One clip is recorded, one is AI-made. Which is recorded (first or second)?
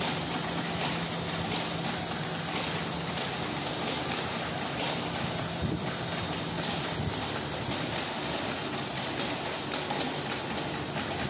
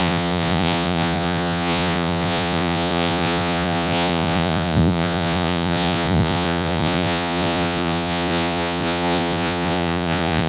first